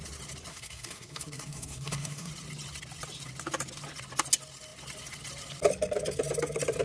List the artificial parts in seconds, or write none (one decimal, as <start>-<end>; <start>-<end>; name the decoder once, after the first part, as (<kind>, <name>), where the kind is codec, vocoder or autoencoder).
0.5-2.3 (codec, SNAC)